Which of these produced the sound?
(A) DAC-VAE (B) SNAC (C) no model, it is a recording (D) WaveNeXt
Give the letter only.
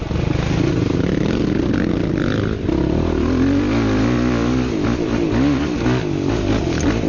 C